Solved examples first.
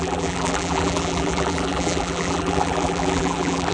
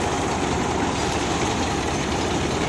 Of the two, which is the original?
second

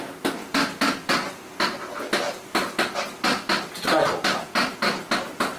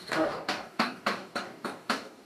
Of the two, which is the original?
first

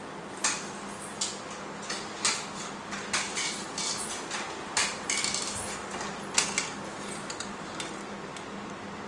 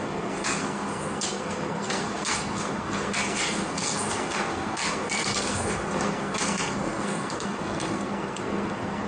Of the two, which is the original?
first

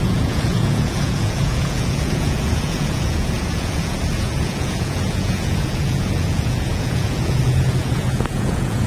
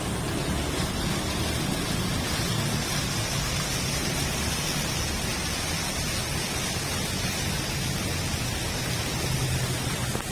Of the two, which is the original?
second